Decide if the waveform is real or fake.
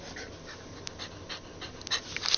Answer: real